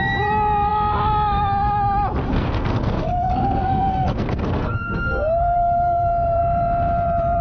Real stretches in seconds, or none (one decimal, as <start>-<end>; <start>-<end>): 0.0-2.3; 6.4-7.4